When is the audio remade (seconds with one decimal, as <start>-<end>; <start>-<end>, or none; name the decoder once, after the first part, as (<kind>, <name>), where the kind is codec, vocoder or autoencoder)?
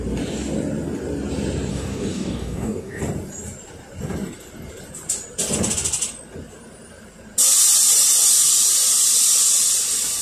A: 1.7-3.0 (codec, DAC)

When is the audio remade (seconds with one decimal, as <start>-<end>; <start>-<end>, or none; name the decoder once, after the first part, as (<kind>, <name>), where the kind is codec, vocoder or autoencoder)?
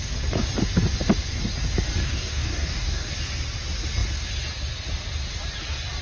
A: 2.0-3.1 (codec, DAC)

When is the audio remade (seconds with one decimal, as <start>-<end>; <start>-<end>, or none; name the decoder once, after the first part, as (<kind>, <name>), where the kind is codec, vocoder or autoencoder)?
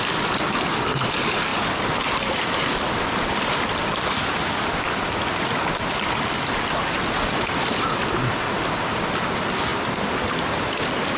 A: none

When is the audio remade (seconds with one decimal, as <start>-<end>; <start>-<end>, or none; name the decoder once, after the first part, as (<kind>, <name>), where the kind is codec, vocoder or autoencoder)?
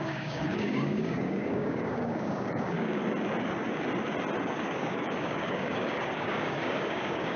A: 0.0-3.0 (codec, DAC); 4.4-7.4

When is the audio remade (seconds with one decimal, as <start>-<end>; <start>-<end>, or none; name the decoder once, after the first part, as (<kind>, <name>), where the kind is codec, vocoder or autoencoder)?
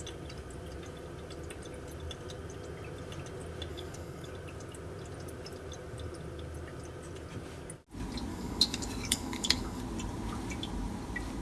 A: 3.7-4.3 (codec, DAC); 8.3-9.8